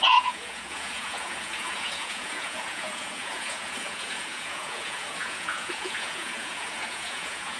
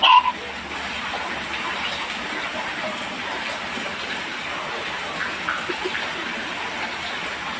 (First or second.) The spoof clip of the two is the first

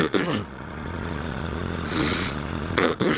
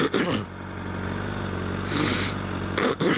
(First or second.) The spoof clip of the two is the first